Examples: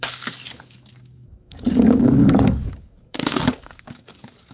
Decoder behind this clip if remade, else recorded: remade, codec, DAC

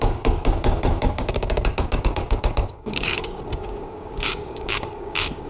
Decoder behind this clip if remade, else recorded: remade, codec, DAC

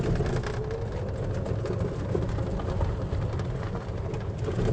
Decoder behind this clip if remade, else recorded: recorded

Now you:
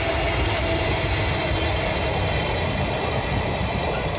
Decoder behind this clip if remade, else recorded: recorded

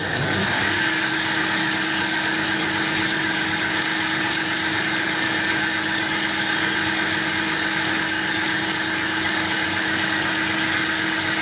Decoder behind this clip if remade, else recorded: remade, codec, DAC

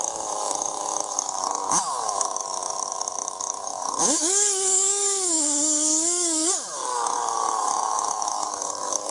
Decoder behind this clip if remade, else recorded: remade, codec, DAC